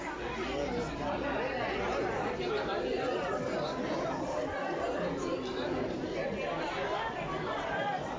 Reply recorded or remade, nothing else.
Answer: recorded